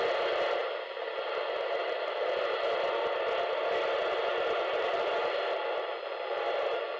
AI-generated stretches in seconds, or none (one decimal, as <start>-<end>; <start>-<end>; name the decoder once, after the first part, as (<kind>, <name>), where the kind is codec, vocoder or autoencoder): none